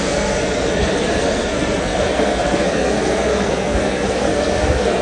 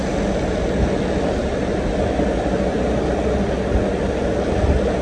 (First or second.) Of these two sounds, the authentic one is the second